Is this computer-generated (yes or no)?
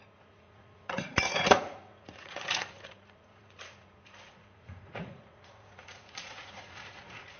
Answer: yes